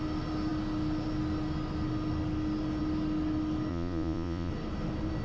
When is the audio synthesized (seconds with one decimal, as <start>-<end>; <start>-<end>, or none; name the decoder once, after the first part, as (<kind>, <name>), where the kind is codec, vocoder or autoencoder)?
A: 3.7-4.5 (vocoder, Vocos)